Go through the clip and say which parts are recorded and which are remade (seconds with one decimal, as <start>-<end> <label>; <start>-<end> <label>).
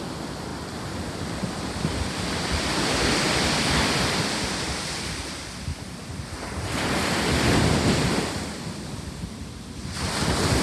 0.0-10.6 recorded